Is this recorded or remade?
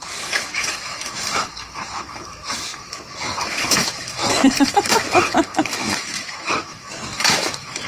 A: remade